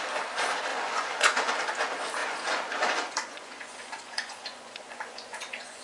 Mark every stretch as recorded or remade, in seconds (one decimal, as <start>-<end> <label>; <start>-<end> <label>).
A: 0.0-0.7 recorded; 0.7-1.5 remade; 1.5-2.2 recorded; 2.2-5.8 remade